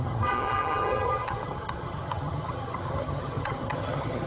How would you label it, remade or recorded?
remade